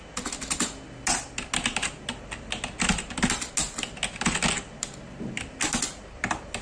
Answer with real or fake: real